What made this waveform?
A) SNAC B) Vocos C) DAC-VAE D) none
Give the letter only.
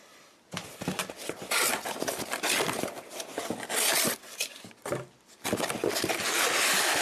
D